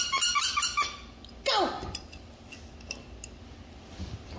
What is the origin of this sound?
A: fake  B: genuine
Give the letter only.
B